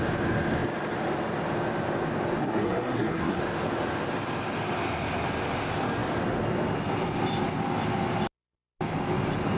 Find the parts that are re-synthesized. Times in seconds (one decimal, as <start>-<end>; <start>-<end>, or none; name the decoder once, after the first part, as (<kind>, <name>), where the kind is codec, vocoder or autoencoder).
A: 2.4-3.4 (codec, SNAC)